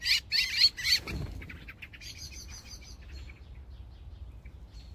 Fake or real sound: real